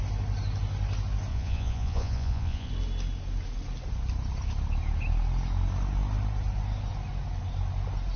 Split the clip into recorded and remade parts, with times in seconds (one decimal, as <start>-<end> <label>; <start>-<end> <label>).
0.0-1.3 recorded; 1.3-2.7 remade; 2.7-8.2 recorded